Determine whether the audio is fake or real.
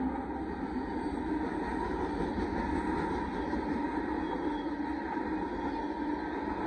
real